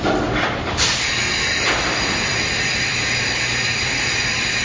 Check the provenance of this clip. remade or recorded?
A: remade